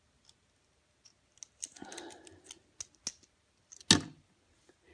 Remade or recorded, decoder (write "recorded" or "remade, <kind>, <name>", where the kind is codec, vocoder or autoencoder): recorded